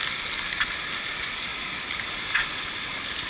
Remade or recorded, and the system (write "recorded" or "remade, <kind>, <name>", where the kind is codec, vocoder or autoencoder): recorded